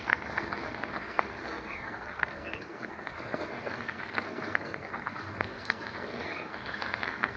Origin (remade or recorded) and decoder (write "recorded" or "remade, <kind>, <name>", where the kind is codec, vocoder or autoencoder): remade, codec, SNAC